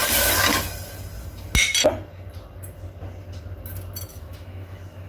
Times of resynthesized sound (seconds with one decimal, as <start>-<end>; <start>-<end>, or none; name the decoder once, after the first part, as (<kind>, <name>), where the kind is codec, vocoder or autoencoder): 4.1-5.1 (autoencoder, DAC-VAE)